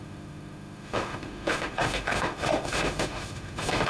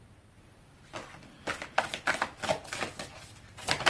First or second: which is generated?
first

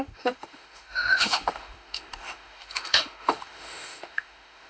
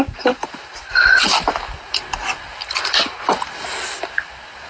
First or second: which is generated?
first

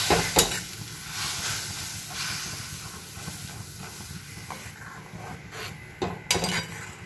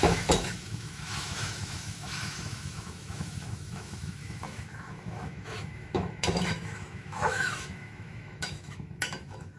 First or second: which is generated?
second